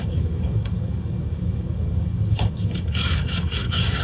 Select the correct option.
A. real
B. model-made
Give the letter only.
B